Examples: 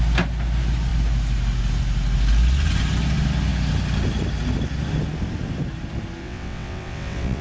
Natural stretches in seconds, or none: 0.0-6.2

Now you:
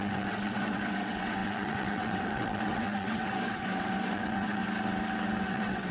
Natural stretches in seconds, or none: 4.6-5.5

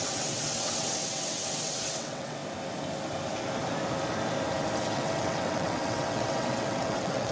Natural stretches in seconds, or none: 2.4-4.9

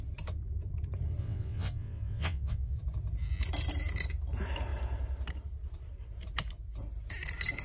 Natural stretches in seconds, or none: 0.0-1.2; 2.8-7.6

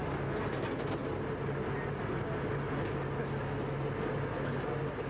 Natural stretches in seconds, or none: 0.0-5.1